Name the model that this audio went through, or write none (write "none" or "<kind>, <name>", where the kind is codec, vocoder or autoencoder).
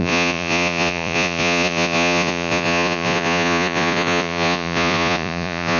vocoder, Vocos